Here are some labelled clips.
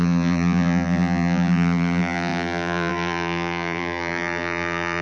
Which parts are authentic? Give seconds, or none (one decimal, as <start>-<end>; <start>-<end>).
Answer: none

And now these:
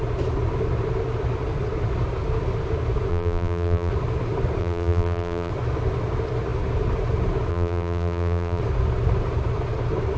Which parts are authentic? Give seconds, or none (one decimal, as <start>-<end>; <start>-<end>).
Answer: 0.0-3.1; 3.9-4.6; 5.5-7.5; 8.6-10.2

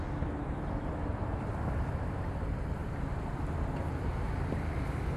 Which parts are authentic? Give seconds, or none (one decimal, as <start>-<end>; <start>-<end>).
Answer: 0.0-1.1; 1.9-5.2

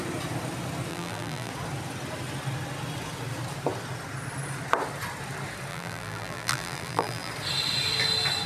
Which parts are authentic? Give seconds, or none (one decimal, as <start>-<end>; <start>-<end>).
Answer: 0.0-0.9; 1.5-5.7; 7.3-8.5